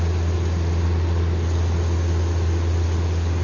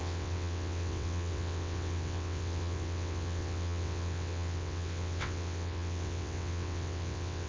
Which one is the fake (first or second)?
second